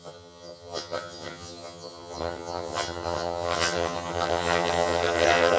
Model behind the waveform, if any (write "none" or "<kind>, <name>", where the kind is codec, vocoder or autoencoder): vocoder, HiFi-GAN